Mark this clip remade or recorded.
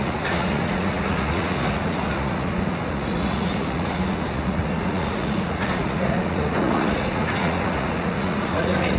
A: remade